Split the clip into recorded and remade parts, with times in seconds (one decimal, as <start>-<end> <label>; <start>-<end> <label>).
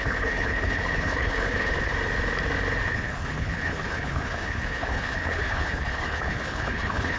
0.0-1.9 remade; 1.9-2.9 recorded; 2.9-7.2 remade